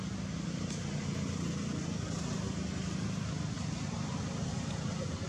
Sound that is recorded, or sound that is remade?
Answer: recorded